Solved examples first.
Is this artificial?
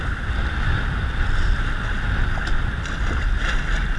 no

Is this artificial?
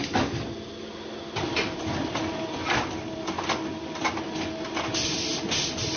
no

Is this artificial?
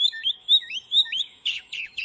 yes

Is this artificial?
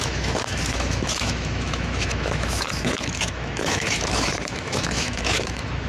yes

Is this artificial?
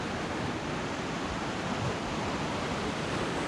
no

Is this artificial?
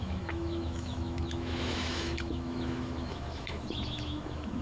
yes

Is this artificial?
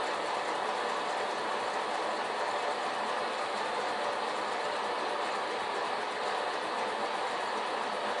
no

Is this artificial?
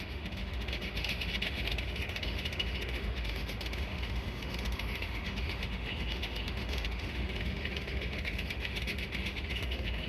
yes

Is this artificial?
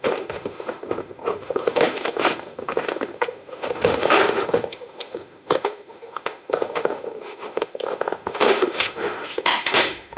yes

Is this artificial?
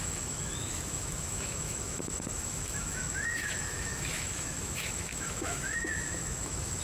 yes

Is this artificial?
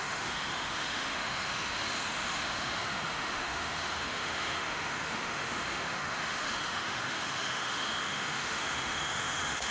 yes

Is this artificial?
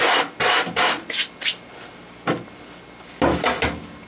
no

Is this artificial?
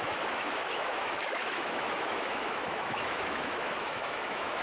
yes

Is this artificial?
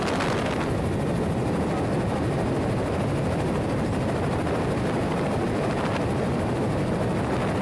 no